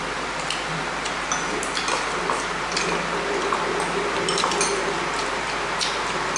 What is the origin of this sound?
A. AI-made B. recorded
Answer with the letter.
B